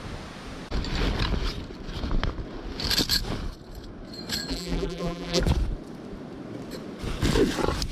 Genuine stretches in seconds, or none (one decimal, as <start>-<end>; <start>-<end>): 0.0-4.5; 5.4-7.9